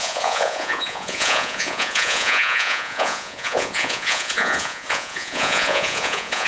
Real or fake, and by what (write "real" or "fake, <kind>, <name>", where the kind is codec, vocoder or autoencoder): fake, vocoder, Vocos